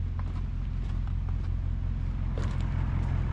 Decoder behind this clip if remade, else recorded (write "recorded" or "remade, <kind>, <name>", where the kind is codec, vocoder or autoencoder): recorded